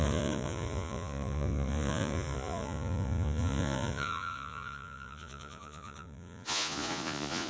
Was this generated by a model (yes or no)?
yes